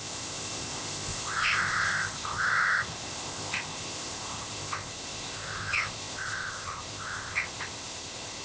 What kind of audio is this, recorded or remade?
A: remade